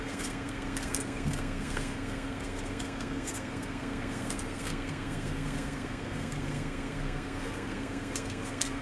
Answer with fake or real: fake